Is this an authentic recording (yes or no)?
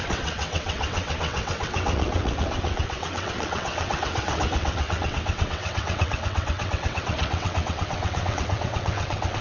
no